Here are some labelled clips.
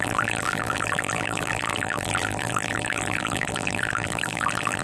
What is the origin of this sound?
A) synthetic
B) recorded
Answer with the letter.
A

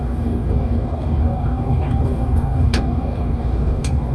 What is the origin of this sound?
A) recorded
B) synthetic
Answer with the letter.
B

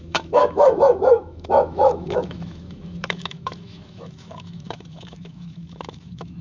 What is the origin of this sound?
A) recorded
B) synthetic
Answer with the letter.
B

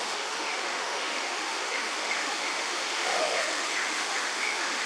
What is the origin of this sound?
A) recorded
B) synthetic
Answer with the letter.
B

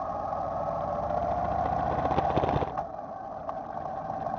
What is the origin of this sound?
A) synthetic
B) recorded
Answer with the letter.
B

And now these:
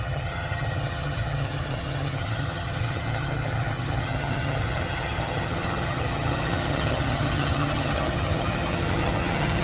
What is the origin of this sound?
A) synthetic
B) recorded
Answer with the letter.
A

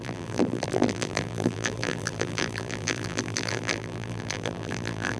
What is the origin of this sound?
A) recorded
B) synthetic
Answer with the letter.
B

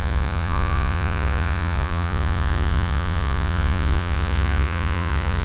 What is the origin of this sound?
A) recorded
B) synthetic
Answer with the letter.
B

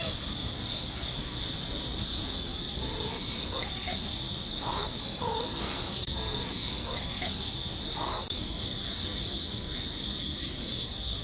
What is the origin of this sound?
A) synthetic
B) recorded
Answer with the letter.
A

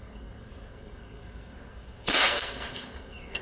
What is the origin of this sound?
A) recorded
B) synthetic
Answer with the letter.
B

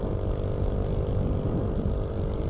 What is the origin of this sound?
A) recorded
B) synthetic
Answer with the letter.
A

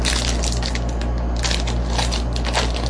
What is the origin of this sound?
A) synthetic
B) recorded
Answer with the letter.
B